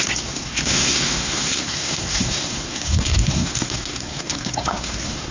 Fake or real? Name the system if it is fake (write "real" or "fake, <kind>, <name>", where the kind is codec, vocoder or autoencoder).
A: fake, codec, SNAC